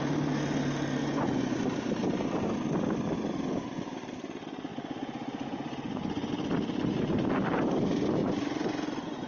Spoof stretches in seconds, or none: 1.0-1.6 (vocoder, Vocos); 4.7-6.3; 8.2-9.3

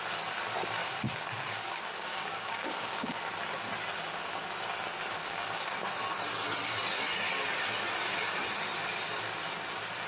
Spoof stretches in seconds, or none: 0.8-3.2 (codec, DAC); 5.2-5.9

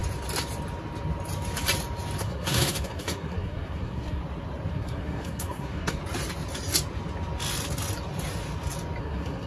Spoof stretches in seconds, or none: 2.2-4.2 (codec, SNAC); 4.7-6.0; 9.0-9.5

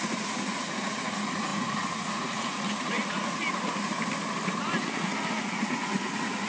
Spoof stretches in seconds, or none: 0.0-3.4 (vocoder, Vocos); 4.8-6.5

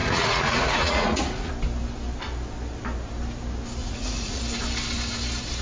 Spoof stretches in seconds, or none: 0.0-1.5 (vocoder, Vocos); 3.8-4.4

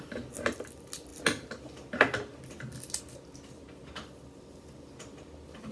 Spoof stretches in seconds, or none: none

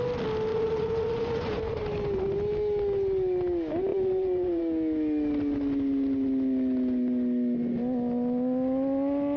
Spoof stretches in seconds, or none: 0.5-1.8 (vocoder, Vocos); 3.9-4.6